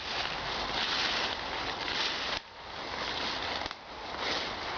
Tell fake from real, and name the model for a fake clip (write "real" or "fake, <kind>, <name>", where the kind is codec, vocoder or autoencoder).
real